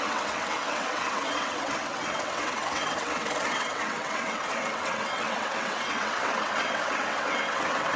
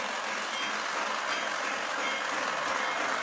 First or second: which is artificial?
first